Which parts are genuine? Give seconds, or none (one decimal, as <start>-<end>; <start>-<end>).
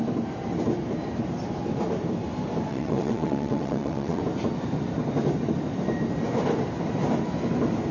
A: 0.0-2.7; 4.2-7.9